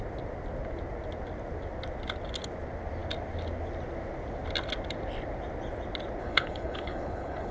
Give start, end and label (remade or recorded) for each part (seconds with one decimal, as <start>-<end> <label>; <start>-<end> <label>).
0.0-6.2 recorded; 6.2-7.5 remade